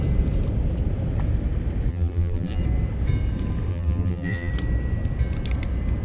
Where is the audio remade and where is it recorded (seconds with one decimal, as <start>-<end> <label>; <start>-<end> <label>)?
0.0-1.9 recorded; 1.9-2.6 remade; 2.6-3.7 recorded; 3.7-4.5 remade; 4.5-6.0 recorded